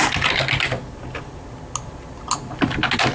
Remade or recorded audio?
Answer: recorded